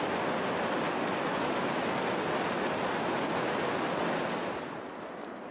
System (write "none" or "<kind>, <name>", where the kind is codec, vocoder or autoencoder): none